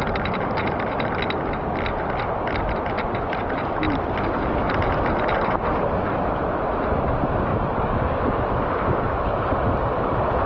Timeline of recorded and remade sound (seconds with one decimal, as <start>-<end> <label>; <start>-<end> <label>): 0.0-10.5 recorded